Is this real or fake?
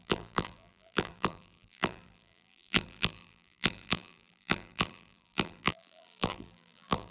fake